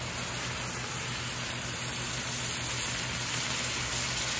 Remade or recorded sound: recorded